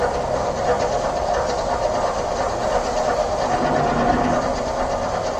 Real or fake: real